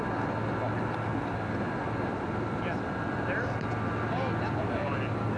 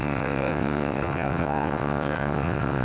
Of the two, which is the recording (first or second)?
first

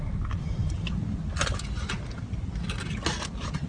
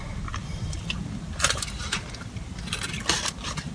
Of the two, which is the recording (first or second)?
first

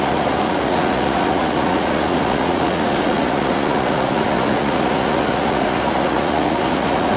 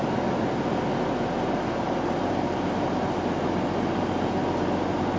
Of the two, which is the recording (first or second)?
second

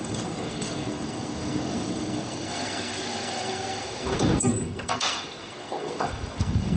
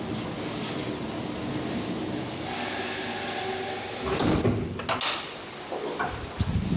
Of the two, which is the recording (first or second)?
second